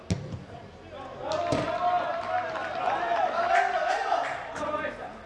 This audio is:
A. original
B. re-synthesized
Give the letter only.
A